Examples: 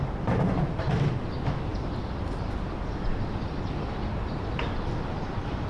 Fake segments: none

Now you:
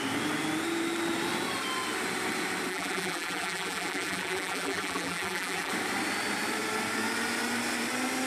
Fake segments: 2.7-5.7 (vocoder, BigVGAN v2)